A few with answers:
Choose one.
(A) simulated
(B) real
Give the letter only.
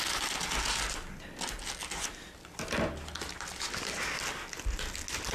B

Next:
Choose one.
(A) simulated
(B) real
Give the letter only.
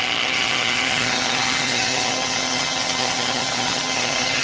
A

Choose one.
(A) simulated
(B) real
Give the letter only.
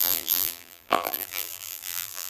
A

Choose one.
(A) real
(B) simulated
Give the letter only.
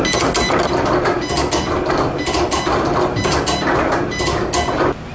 A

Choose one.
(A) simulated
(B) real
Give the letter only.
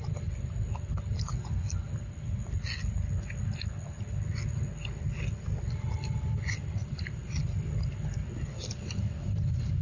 B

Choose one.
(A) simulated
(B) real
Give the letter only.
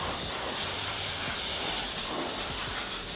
A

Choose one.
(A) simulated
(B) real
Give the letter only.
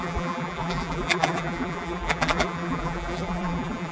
A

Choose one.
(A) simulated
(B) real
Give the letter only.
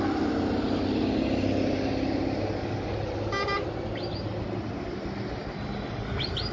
B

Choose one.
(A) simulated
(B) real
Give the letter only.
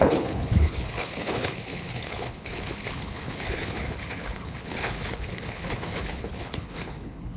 A